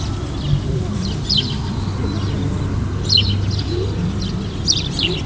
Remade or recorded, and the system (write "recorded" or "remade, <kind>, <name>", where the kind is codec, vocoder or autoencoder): recorded